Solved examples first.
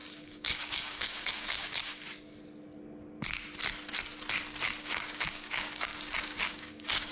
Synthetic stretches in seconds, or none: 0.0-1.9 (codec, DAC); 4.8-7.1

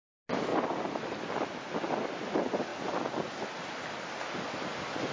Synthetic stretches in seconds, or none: none

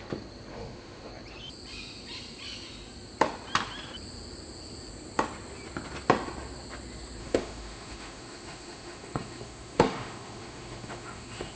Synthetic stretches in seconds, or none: 0.5-1.1 (autoencoder, DAC-VAE); 7.2-11.6